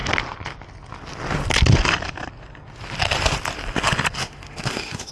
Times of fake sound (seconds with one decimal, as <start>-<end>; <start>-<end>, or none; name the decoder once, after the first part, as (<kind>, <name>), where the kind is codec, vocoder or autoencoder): 4.2-5.1 (autoencoder, DAC-VAE)